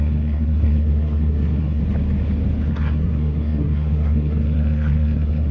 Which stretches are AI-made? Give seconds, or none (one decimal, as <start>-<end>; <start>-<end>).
0.0-1.8; 2.7-5.5